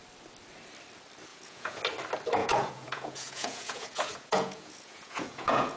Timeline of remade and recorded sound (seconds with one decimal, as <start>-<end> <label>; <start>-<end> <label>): 0.0-1.3 recorded; 1.3-1.8 remade; 1.8-2.4 recorded; 2.4-5.8 remade